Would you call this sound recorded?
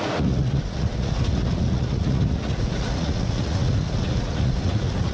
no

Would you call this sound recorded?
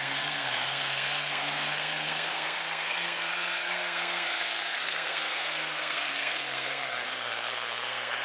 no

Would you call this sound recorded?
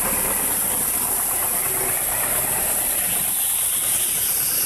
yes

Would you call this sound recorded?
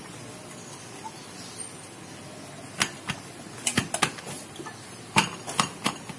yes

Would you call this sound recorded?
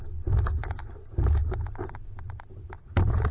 yes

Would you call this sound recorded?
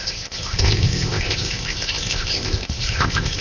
no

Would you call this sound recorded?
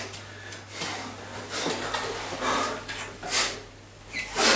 yes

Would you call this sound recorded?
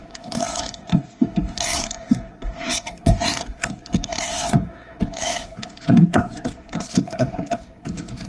no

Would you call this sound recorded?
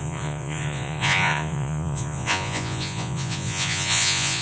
no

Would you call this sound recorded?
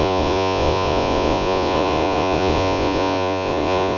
no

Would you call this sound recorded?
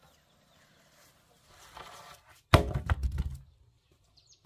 yes